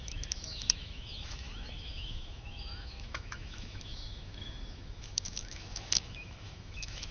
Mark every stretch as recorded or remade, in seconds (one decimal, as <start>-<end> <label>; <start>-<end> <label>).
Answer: 0.0-7.1 remade